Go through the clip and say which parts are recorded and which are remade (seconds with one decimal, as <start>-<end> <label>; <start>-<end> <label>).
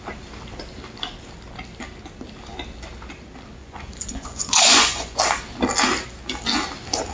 0.0-3.6 recorded; 3.6-5.2 remade; 5.2-7.1 recorded